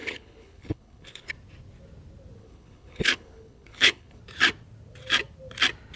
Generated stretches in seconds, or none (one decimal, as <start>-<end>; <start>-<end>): 0.0-1.3; 2.4-4.2